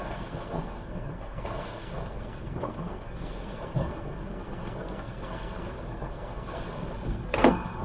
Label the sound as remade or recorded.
remade